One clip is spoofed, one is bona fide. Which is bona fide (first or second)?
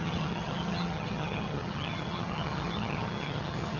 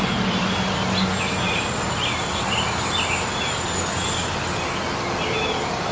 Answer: second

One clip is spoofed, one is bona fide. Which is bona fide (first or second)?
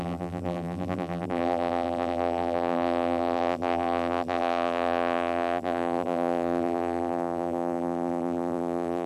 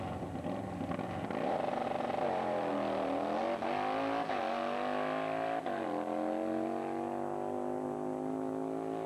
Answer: second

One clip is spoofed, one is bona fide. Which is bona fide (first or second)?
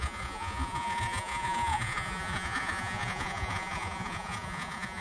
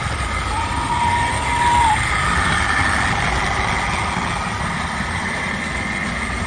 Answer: second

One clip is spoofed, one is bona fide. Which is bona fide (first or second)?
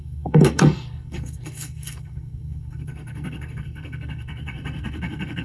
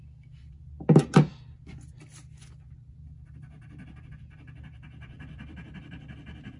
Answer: second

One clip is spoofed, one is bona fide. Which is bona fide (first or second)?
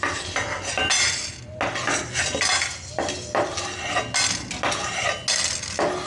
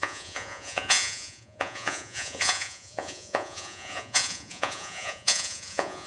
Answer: first